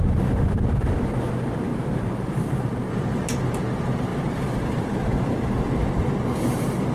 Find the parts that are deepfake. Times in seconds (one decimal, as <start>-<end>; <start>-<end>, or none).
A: 1.7-3.2